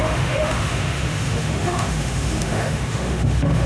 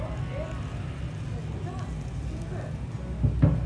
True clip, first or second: second